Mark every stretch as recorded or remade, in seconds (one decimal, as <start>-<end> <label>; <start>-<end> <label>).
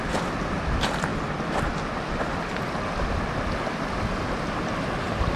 0.0-5.4 recorded